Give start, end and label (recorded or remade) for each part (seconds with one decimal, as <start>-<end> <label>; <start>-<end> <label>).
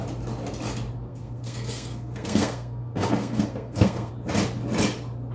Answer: 0.0-1.1 recorded; 1.1-4.1 remade; 4.1-5.3 recorded